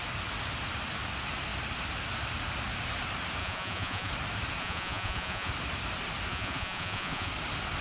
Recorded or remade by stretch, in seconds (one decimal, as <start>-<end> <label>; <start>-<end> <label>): 0.0-3.4 recorded; 3.4-4.1 remade; 4.1-4.6 recorded; 4.6-5.5 remade; 5.5-6.3 recorded; 6.3-7.3 remade; 7.3-7.8 recorded